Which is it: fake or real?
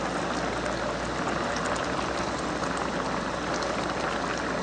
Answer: real